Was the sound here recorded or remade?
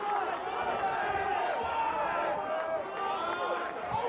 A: recorded